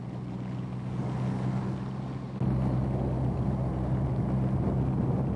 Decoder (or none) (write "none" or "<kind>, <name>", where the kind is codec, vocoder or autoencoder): none